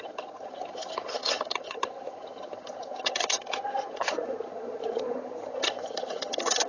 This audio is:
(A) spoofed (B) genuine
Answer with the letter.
A